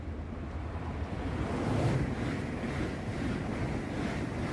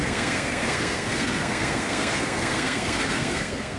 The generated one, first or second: second